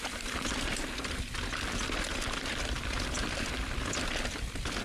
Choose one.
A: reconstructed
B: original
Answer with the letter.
B